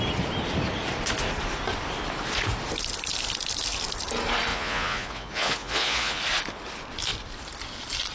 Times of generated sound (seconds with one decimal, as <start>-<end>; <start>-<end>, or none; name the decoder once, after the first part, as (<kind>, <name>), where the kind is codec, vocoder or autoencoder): 4.5-6.2 (vocoder, Vocos)